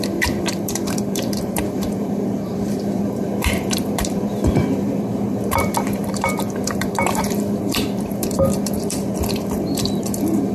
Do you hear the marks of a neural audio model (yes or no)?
yes